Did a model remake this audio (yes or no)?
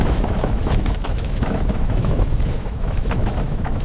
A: yes